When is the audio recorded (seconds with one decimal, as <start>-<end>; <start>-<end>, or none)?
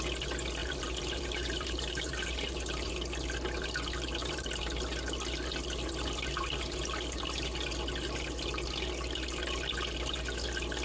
0.0-0.6; 2.9-4.2; 4.8-10.8